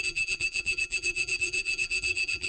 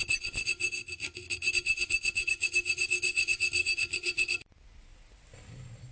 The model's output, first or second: first